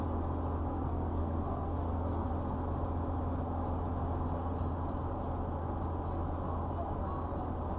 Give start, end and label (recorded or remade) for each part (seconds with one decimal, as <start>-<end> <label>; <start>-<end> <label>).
0.0-0.7 recorded; 0.7-2.3 remade; 2.3-7.8 recorded

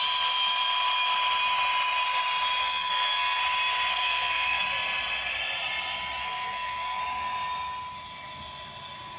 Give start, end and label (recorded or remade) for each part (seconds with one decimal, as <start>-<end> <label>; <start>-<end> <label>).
0.0-2.6 recorded; 2.6-3.4 remade; 3.4-3.9 recorded; 3.9-4.6 remade; 4.6-6.2 recorded; 6.2-7.0 remade; 7.0-9.2 recorded

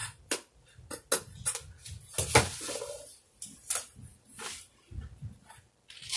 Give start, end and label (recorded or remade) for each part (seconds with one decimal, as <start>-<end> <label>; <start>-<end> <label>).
0.0-6.2 recorded